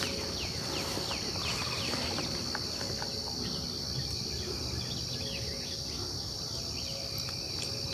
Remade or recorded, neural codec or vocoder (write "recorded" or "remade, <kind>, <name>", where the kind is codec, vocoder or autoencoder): recorded